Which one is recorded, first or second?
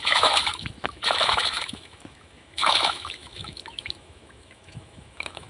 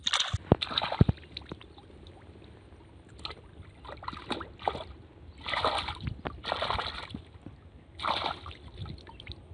second